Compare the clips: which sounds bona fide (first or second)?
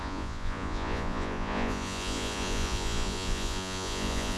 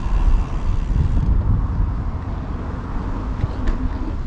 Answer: second